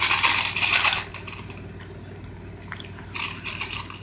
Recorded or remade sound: recorded